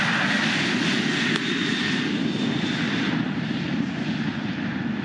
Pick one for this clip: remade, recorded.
recorded